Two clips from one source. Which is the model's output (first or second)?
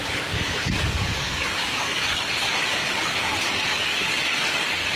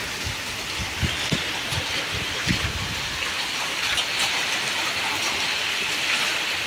first